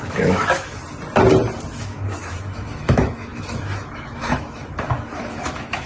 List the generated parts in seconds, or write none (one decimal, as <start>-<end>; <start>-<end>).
0.0-0.8; 1.7-5.9